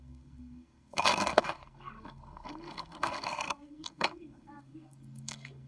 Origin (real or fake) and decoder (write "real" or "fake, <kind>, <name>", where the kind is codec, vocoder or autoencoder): fake, codec, SNAC